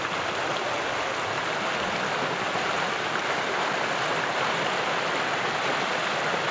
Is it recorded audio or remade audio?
recorded